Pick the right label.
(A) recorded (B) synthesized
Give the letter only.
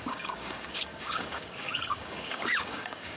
B